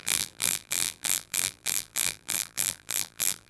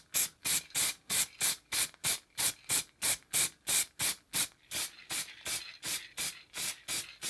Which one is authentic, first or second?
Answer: second